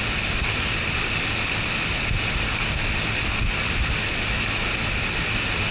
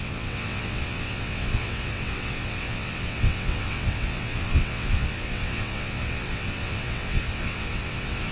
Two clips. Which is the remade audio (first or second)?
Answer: second